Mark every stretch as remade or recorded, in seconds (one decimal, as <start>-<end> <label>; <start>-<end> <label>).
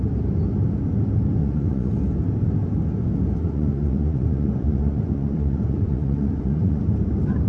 0.0-1.4 recorded; 1.4-1.9 remade; 1.9-3.4 recorded; 3.4-6.8 remade; 6.8-7.5 recorded